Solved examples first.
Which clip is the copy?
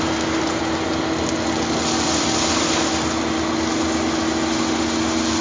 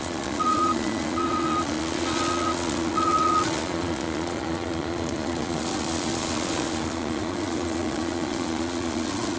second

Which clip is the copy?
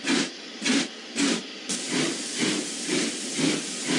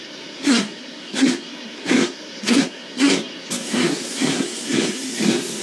second